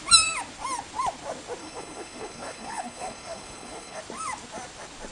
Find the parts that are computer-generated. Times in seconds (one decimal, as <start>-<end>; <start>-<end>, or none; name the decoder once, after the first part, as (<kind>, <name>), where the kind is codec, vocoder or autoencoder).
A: 1.6-4.0 (codec, HILCodec)